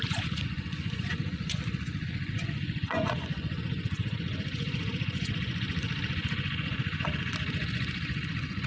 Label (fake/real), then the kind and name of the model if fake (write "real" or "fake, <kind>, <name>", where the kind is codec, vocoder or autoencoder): fake, vocoder, Vocos